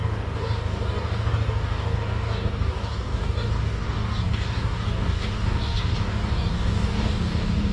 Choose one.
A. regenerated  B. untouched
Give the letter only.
A